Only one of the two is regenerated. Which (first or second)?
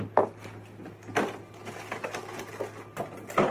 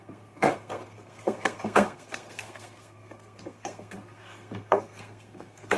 second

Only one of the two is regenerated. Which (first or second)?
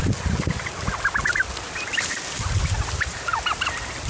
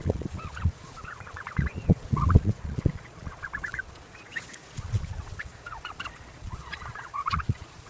second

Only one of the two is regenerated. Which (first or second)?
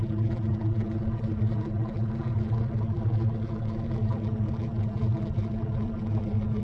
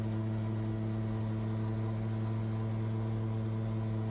first